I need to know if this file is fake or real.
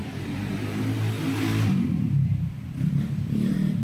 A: fake